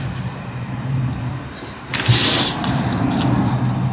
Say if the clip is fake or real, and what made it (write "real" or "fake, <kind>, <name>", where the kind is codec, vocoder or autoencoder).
real